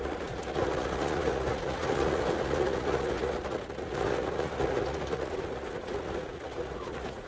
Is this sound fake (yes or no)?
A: yes